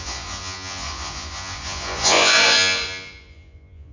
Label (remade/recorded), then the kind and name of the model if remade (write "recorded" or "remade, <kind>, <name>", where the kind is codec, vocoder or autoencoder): remade, vocoder, Vocos